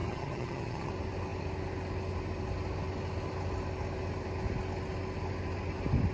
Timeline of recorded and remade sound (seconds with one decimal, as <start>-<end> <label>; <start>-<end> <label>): 0.0-0.9 remade; 0.9-6.1 recorded